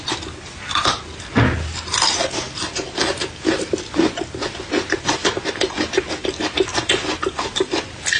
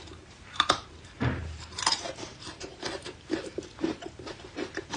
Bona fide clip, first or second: first